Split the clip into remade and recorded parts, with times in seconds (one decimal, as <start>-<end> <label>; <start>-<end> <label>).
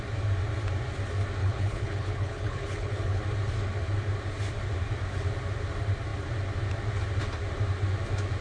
0.0-1.4 recorded; 1.4-3.2 remade; 3.2-8.4 recorded